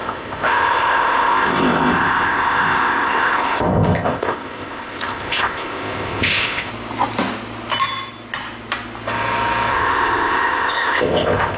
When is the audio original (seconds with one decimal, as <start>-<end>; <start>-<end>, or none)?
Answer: 6.7-9.7